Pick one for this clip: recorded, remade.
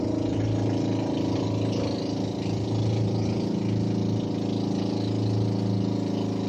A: recorded